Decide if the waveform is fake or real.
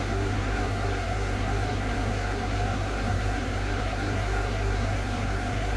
fake